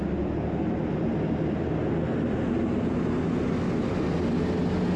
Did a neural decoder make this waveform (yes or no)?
no